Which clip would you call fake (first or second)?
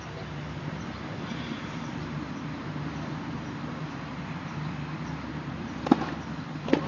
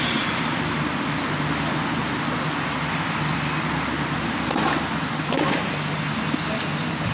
first